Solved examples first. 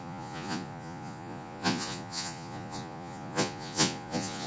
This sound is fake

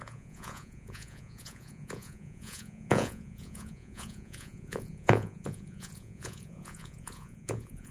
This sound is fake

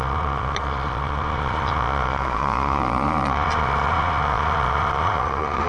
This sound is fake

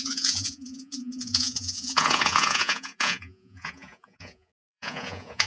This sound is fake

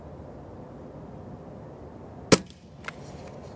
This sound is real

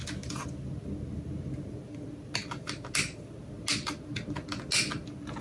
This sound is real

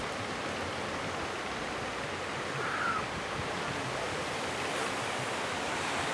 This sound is real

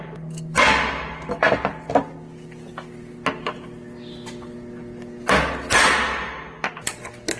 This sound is real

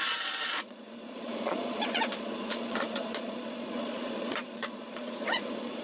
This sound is fake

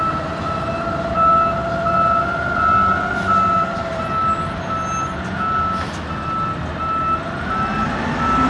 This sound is real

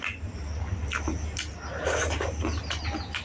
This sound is real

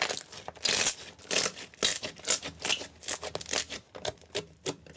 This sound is real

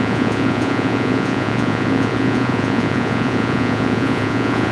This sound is fake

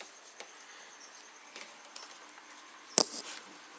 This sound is real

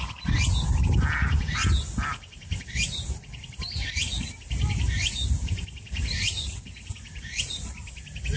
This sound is real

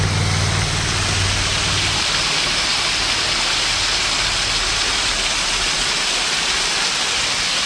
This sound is real